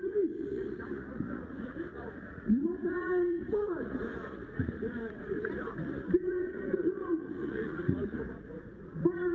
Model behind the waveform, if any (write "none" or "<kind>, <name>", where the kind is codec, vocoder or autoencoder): vocoder, Vocos